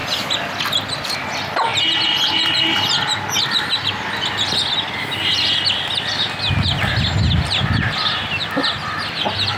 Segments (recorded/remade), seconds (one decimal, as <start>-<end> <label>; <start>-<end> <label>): 0.0-9.6 recorded